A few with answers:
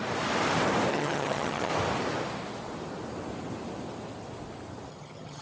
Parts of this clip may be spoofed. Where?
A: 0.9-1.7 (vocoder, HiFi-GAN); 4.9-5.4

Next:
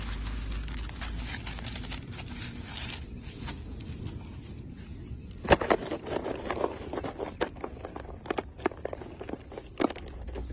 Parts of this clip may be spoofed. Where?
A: none